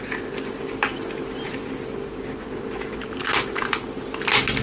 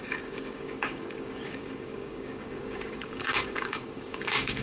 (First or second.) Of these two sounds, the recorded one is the first